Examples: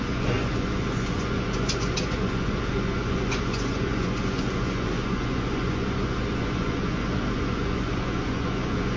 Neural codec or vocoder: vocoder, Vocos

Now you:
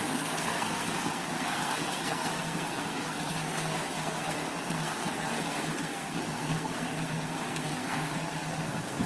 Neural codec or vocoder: codec, SNAC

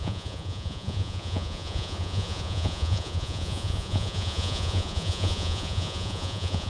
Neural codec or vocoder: vocoder, Vocos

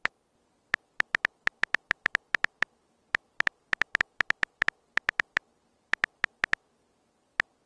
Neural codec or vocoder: none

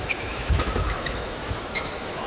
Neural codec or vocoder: autoencoder, DAC-VAE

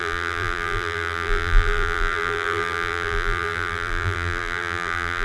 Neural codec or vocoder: vocoder, BigVGAN v2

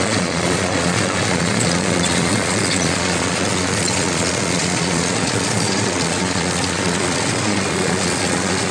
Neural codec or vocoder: vocoder, Vocos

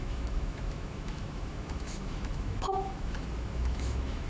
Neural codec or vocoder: autoencoder, DAC-VAE